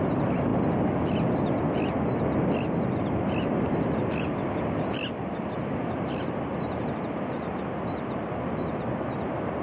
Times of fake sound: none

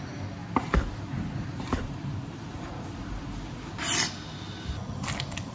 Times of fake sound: 0.4-3.7

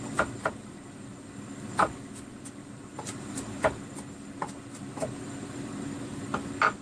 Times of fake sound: 2.6-3.6

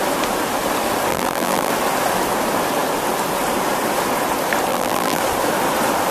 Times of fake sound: 1.1-1.7; 4.7-5.2

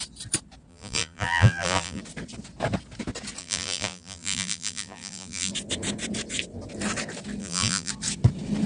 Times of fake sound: 0.7-2.0; 3.4-5.5; 7.4-7.9